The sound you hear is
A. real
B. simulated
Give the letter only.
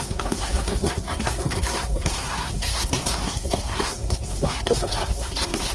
B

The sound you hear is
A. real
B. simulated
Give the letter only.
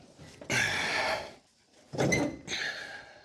A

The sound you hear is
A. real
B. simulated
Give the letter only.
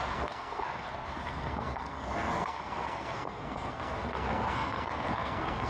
B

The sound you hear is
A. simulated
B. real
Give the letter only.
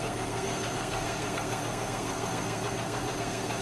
A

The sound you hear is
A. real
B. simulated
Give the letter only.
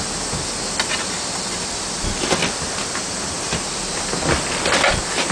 A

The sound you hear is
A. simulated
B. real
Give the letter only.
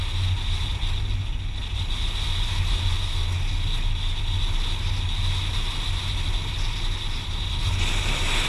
B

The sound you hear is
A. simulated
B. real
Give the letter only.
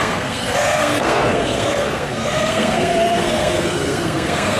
A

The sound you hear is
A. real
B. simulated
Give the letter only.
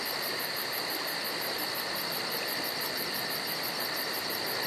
A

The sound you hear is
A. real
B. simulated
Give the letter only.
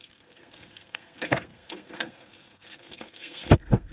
B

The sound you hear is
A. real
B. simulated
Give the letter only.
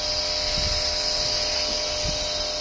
A